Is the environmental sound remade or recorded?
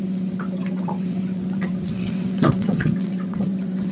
remade